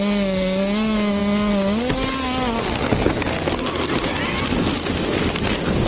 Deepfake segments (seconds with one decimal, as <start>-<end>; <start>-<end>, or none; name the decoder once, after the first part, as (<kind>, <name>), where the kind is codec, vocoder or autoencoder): none